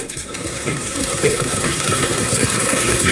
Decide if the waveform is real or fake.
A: fake